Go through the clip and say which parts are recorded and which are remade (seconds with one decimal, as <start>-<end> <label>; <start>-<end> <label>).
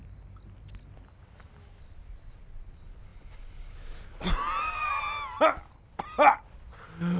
0.0-7.2 recorded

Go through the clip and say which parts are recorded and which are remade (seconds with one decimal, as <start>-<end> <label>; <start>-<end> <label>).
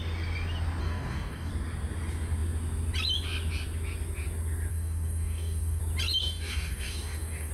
0.0-0.8 recorded; 0.8-1.5 remade; 1.5-4.7 recorded; 4.7-5.8 remade; 5.8-6.2 recorded; 6.2-7.5 remade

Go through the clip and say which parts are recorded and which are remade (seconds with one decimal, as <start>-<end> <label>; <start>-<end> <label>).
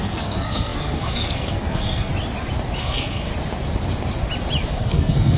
0.0-2.1 remade; 2.1-2.8 recorded; 2.8-3.3 remade; 3.3-4.7 recorded; 4.7-5.4 remade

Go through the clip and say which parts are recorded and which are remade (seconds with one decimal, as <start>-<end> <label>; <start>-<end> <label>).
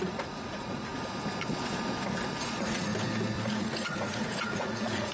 0.0-0.9 remade; 0.9-2.4 recorded; 2.4-2.9 remade; 2.9-3.5 recorded; 3.5-5.1 remade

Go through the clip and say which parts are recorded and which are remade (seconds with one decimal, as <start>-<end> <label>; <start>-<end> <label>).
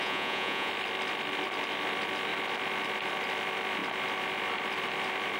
0.0-0.7 remade; 0.7-5.4 recorded